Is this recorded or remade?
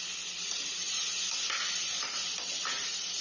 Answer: recorded